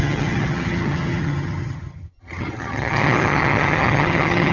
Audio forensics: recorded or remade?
remade